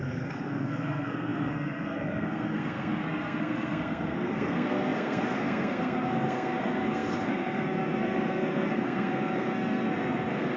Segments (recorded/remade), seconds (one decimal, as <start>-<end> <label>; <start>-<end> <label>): 0.0-10.6 remade